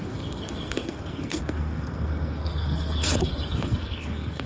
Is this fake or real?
fake